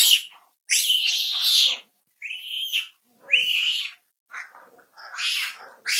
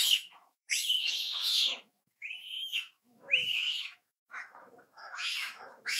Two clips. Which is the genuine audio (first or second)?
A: first